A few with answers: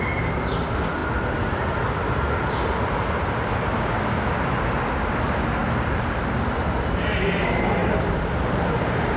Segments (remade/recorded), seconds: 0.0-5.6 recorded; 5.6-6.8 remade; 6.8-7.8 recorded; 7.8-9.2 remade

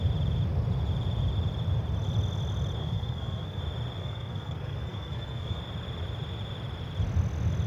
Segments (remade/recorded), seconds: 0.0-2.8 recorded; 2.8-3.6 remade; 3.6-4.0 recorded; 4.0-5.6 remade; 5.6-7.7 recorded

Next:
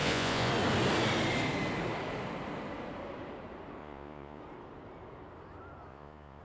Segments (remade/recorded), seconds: 0.0-0.5 remade; 0.5-3.8 recorded; 3.8-4.4 remade; 4.4-5.9 recorded; 5.9-6.4 remade

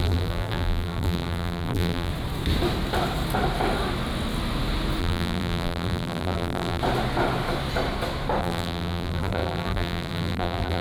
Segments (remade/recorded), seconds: 0.0-2.1 remade; 2.1-5.0 recorded; 5.0-6.8 remade; 6.8-8.4 recorded; 8.4-10.8 remade